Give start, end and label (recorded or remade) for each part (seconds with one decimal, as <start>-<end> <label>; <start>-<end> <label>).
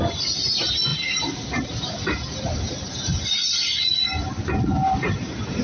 0.0-5.6 recorded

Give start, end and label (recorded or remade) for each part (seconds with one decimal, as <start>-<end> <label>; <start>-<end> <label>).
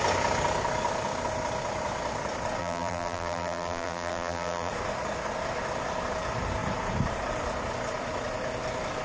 0.0-2.6 recorded; 2.6-4.7 remade; 4.7-9.0 recorded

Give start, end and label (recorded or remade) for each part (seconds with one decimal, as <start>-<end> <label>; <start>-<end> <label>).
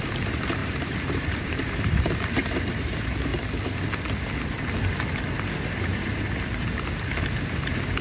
0.0-3.3 remade; 3.3-5.4 recorded; 5.4-5.9 remade; 5.9-6.6 recorded; 6.6-8.0 remade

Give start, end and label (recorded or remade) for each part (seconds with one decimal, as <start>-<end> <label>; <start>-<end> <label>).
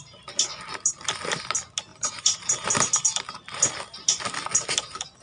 0.0-1.9 recorded; 1.9-2.7 remade; 2.7-5.2 recorded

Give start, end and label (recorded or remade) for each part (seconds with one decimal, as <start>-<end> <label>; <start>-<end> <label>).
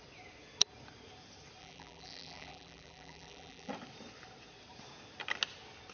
0.0-1.6 recorded; 1.6-3.7 remade; 3.7-5.9 recorded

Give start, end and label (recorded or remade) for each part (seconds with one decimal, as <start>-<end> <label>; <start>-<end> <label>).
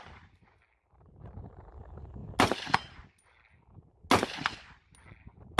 0.0-5.6 recorded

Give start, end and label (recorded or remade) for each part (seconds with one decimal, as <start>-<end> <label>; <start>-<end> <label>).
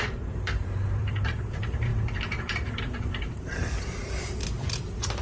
0.0-5.2 remade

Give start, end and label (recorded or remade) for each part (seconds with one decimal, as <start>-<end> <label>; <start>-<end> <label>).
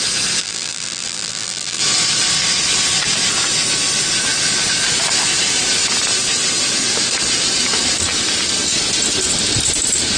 0.0-0.4 recorded; 0.4-1.8 remade; 1.8-10.2 recorded